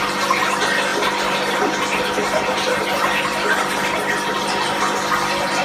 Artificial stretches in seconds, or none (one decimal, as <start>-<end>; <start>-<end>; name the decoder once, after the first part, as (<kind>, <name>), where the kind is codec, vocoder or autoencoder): none